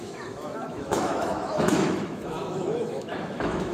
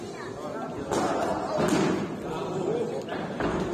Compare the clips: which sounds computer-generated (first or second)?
first